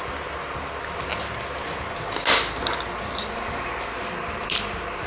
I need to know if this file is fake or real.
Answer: real